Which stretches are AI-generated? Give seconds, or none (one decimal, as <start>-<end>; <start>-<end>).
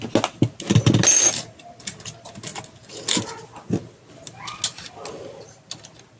none